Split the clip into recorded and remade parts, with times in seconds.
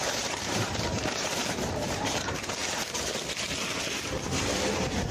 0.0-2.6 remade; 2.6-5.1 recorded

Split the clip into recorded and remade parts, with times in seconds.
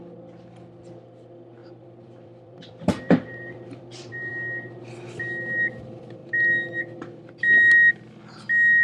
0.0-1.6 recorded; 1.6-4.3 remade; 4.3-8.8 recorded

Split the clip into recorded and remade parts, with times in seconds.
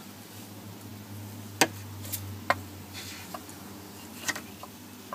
0.0-4.1 recorded; 4.1-5.1 remade